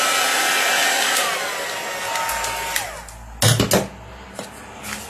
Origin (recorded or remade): recorded